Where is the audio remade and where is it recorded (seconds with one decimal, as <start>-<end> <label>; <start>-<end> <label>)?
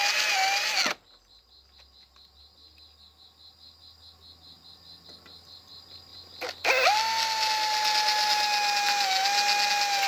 0.0-10.1 recorded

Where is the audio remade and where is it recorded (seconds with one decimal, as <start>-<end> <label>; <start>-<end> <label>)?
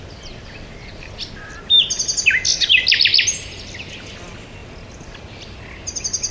0.0-6.3 recorded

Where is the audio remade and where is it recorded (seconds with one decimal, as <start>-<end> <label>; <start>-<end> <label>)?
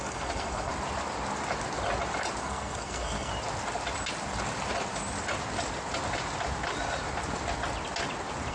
0.0-0.7 remade; 0.7-2.4 recorded; 2.4-3.3 remade; 3.3-8.5 recorded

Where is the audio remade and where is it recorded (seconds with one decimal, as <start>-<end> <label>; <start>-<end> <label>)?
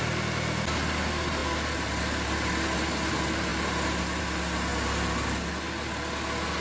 0.0-6.6 recorded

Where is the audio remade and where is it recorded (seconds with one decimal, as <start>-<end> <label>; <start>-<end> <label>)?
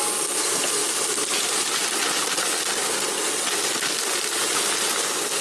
0.0-5.4 recorded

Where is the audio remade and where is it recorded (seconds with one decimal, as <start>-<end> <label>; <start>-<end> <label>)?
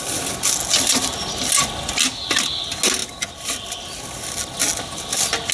0.0-5.5 recorded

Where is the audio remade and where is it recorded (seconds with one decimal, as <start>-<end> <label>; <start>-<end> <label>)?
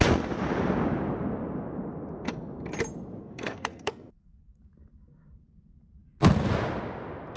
0.0-3.2 recorded; 3.2-4.6 remade; 4.6-7.4 recorded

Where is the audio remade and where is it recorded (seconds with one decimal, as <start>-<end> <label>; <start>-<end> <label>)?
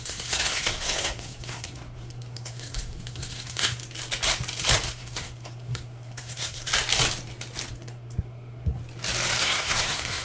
0.0-3.8 remade; 3.8-4.9 recorded; 4.9-6.7 remade; 6.7-7.7 recorded; 7.7-8.8 remade; 8.8-9.4 recorded; 9.4-10.2 remade